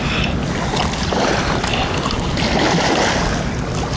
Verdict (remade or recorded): recorded